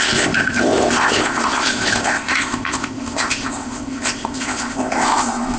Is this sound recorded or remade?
remade